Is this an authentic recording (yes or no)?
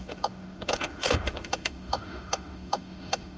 no